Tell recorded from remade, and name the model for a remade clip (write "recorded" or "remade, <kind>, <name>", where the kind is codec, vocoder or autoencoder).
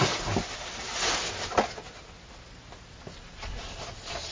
recorded